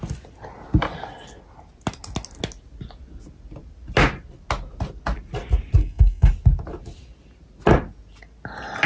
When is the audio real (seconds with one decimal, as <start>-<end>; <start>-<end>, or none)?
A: 0.0-5.8; 6.3-8.9